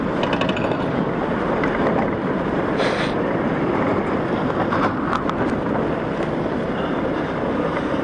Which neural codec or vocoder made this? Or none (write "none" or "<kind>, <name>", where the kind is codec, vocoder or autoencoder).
none